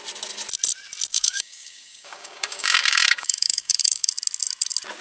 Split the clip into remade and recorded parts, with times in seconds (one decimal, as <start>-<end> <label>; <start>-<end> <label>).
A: 0.0-1.1 recorded; 1.1-4.1 remade; 4.1-5.0 recorded